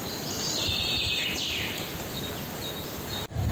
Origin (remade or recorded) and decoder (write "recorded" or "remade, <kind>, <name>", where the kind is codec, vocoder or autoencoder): recorded